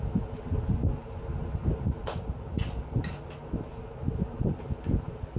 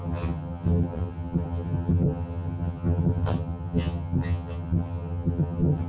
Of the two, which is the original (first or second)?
first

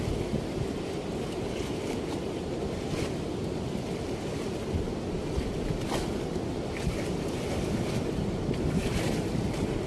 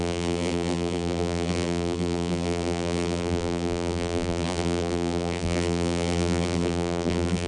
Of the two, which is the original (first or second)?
first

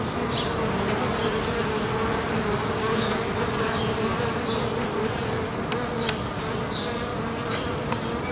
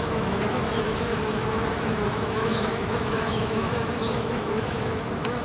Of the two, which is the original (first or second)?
first